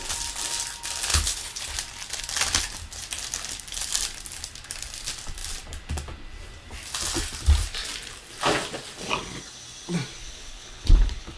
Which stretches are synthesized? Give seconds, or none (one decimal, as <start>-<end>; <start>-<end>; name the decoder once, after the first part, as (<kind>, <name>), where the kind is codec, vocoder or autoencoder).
1.1-1.6 (codec, HILCodec); 10.2-11.4